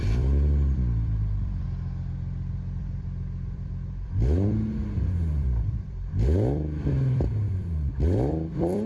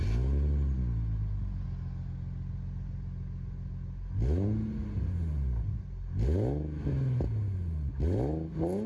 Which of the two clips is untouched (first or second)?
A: second